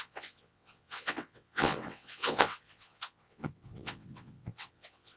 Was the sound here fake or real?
fake